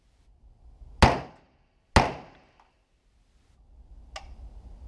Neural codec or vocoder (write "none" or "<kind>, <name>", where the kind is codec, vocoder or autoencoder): none